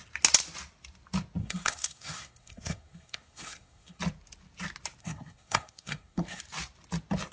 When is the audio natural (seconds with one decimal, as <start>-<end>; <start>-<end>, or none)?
0.0-1.4; 4.0-5.0; 6.4-7.3